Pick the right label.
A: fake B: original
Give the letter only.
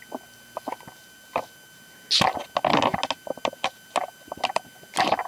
B